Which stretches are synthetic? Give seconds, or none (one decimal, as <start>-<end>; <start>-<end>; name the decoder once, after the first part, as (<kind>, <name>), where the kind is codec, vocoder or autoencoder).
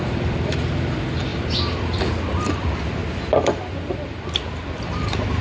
0.0-3.0 (vocoder, BigVGAN v2); 3.9-5.4